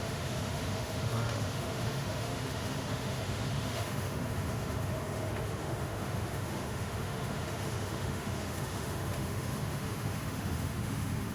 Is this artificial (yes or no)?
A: yes